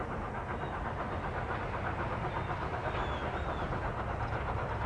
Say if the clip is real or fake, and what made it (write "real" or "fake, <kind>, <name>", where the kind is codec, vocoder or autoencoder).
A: real